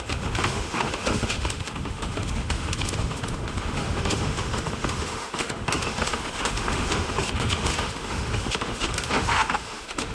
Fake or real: fake